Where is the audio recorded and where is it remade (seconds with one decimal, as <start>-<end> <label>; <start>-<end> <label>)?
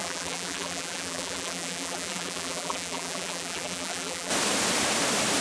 0.0-4.3 remade; 4.3-5.4 recorded